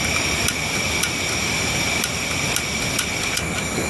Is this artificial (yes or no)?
no